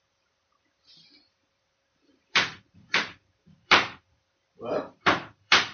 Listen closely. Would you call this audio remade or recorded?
remade